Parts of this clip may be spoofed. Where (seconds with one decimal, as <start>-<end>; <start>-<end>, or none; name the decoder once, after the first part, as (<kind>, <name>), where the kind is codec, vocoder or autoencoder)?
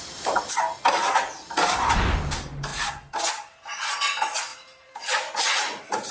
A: none